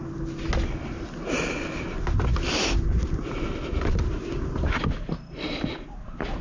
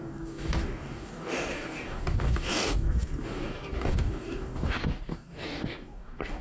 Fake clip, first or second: second